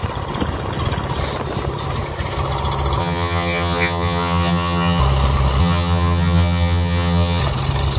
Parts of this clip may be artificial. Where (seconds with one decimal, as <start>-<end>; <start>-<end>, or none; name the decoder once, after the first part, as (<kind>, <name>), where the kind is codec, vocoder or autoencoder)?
3.0-5.0 (vocoder, HiFi-GAN); 5.6-7.4